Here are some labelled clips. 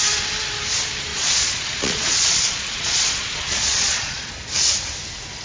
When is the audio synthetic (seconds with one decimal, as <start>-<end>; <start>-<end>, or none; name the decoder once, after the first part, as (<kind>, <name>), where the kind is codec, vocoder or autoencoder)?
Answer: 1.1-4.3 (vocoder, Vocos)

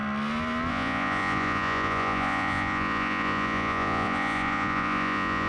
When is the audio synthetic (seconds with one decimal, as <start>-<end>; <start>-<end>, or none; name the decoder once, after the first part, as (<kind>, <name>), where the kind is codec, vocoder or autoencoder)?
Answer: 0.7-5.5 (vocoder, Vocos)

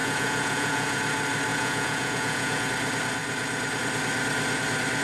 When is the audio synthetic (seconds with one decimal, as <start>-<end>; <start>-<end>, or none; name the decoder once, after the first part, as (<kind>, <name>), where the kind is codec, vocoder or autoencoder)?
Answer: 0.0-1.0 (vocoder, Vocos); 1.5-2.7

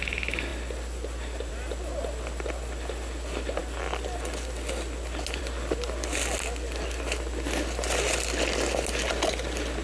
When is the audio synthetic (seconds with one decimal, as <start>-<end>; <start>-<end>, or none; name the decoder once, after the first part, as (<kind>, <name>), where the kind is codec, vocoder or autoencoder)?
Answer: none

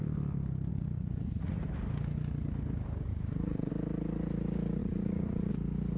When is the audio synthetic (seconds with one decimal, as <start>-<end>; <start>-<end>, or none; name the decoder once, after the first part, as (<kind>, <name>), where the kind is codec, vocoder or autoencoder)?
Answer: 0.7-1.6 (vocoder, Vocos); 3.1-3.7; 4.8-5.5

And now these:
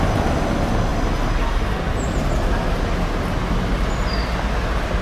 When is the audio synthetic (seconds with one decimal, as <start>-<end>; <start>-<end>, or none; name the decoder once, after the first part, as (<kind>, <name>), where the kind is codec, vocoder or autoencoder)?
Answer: none

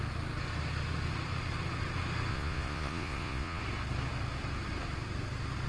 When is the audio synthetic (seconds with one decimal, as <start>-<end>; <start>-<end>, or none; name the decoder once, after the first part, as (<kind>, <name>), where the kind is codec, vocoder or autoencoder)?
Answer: 2.3-3.6 (vocoder, Vocos)

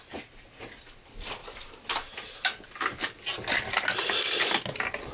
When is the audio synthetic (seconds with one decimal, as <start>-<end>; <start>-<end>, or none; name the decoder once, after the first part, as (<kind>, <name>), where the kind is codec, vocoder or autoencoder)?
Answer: none